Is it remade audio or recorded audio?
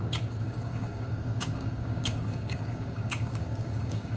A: remade